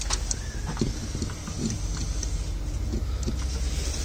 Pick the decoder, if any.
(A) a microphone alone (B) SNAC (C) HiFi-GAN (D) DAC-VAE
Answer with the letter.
A